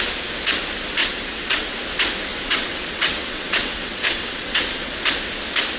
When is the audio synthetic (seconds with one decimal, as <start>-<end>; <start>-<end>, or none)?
1.0-1.7; 2.3-4.9